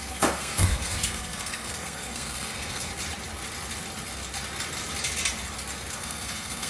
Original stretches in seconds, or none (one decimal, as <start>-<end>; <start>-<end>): 2.9-5.9